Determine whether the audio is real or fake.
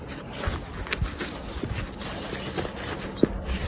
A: real